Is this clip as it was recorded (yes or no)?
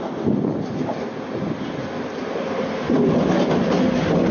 yes